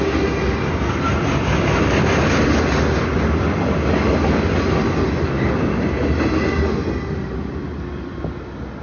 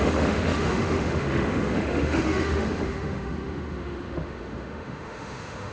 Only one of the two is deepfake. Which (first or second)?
second